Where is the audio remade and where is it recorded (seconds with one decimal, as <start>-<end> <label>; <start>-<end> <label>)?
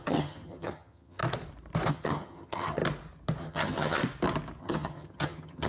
0.0-1.2 remade; 1.2-1.9 recorded; 1.9-2.8 remade; 2.8-3.4 recorded; 3.4-4.0 remade; 4.0-4.6 recorded; 4.6-5.7 remade